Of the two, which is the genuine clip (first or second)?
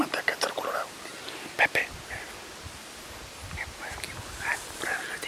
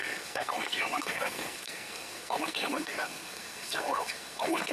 first